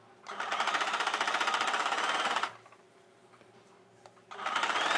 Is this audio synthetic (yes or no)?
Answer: no